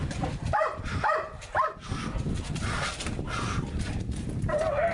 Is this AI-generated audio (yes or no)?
yes